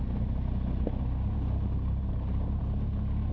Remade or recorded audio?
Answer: recorded